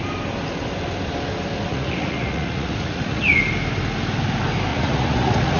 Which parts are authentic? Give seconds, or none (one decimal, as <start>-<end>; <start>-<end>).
0.0-1.7; 3.4-4.7